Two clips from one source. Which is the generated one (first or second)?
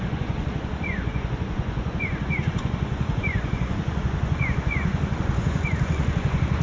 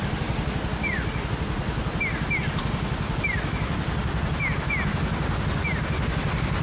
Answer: first